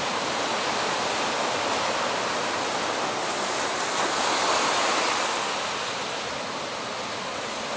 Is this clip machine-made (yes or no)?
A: no